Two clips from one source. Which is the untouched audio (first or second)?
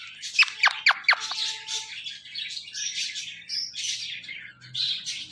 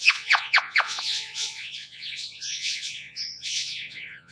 first